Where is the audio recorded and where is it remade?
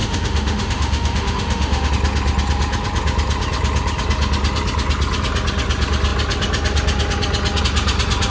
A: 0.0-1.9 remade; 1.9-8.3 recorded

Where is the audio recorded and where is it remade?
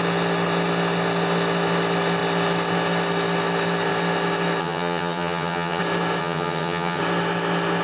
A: 0.0-4.6 recorded; 4.6-5.8 remade; 5.8-6.2 recorded; 6.2-7.0 remade; 7.0-7.8 recorded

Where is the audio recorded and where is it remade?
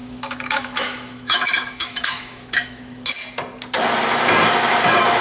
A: 0.0-3.1 remade; 3.1-5.2 recorded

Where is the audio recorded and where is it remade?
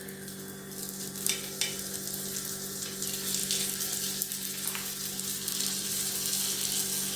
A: 0.0-7.2 recorded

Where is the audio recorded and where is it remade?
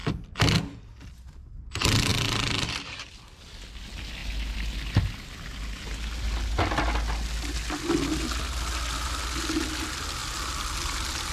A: 0.0-11.3 recorded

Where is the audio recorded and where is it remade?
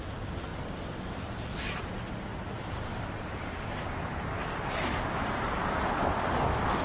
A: 0.0-2.3 recorded; 2.3-5.6 remade; 5.6-6.8 recorded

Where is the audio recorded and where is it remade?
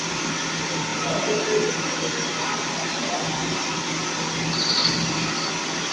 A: 0.0-5.9 recorded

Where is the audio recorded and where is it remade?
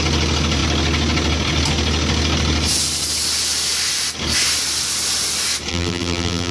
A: 0.0-5.7 recorded; 5.7-6.5 remade